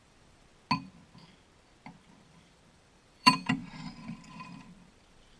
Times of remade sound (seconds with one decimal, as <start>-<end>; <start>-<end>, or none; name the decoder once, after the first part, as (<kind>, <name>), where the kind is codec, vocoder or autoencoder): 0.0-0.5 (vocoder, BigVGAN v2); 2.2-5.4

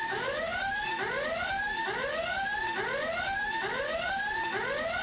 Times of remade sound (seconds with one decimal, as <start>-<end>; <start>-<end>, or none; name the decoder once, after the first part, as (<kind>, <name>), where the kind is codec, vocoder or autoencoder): none

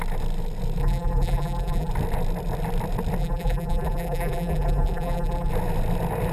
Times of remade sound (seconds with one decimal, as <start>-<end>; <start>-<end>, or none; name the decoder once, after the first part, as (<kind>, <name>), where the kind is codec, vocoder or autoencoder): 0.8-1.9 (vocoder, BigVGAN v2); 3.2-5.5

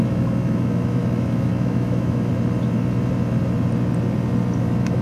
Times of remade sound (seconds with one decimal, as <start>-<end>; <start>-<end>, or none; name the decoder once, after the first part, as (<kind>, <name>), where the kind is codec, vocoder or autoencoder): 0.0-2.3 (autoencoder, DAC-VAE); 4.6-5.0

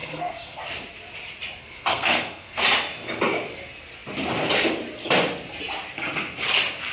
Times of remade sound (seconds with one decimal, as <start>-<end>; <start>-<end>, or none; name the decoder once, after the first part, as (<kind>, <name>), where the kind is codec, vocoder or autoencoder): 0.0-0.6 (codec, SNAC); 1.6-2.6

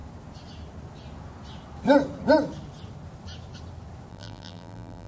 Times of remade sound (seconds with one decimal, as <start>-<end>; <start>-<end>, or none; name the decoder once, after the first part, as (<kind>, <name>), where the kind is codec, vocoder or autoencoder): 4.1-5.1 (vocoder, BigVGAN v2)

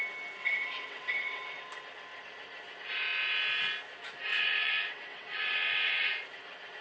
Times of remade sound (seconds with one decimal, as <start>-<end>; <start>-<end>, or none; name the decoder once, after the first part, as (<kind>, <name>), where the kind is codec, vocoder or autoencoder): 0.4-1.6 (vocoder, WaveNeXt); 4.3-6.1

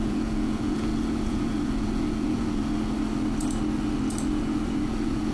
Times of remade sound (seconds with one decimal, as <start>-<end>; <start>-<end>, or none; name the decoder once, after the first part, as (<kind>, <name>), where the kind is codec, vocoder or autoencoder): 0.0-2.6 (vocoder, Vocos); 4.4-5.3